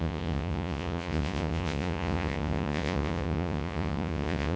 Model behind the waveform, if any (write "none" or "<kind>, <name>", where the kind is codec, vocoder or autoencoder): vocoder, Vocos